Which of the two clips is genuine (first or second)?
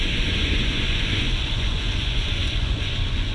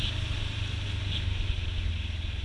second